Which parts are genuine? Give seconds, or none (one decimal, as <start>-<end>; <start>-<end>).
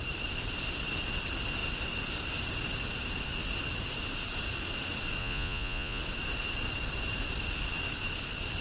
0.0-5.2; 6.0-8.6